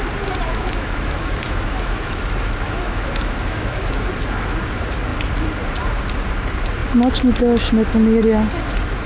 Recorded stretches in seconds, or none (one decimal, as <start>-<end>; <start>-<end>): 0.0-0.5; 4.1-9.1